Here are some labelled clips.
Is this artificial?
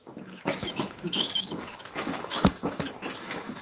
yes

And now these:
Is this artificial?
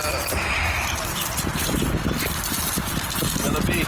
no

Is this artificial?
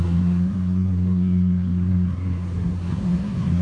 yes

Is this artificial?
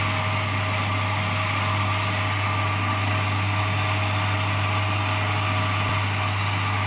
no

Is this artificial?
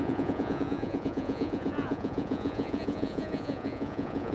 yes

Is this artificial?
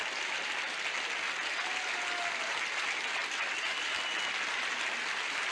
no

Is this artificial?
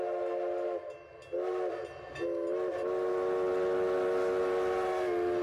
no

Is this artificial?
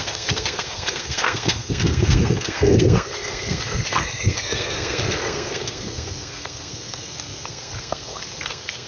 yes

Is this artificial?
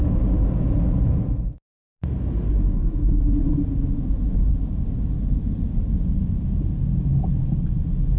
no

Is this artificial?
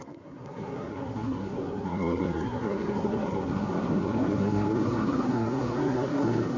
yes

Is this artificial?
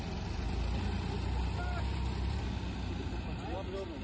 no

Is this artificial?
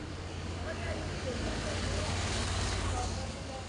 yes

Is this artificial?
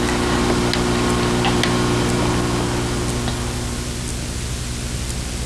no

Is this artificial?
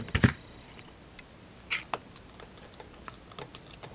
no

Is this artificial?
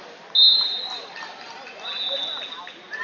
no